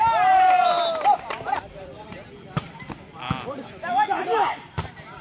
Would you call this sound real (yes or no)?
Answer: yes